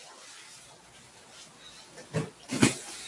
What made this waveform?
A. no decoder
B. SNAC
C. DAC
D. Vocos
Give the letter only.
A